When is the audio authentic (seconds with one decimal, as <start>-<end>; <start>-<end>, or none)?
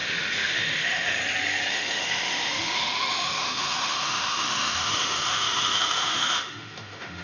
1.2-1.7